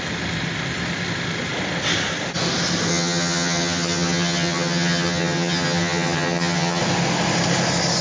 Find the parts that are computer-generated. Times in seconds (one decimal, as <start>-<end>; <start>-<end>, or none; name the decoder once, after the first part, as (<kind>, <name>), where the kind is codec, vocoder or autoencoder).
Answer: 2.9-6.8 (vocoder, HiFi-GAN)